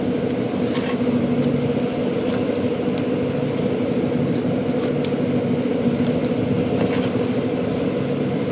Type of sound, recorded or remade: recorded